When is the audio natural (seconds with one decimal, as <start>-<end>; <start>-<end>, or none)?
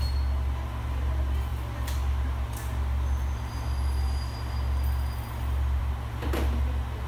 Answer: 0.0-7.1